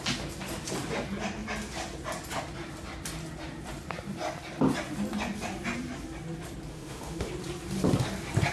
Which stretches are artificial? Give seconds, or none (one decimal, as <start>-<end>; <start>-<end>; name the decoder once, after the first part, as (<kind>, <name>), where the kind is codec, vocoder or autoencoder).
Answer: 6.7-7.3 (autoencoder, DAC-VAE)